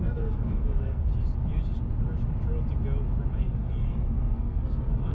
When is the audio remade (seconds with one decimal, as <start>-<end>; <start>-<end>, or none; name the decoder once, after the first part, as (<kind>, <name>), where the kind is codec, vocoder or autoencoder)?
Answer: 0.0-1.1 (codec, SNAC); 3.4-5.1